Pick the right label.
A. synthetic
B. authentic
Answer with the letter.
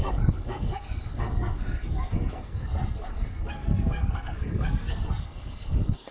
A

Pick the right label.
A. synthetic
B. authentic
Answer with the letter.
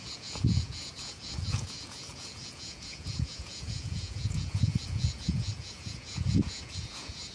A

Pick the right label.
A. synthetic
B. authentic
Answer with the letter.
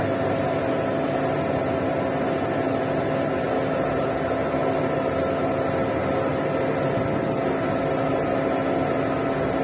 B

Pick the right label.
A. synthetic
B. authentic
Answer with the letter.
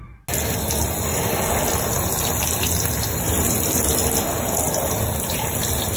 B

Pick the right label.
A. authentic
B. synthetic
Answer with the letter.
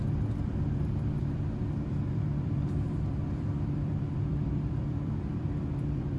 B